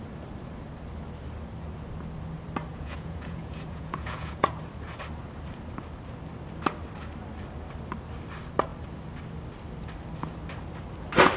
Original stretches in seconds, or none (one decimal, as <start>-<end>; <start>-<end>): 0.0-2.7; 4.6-11.4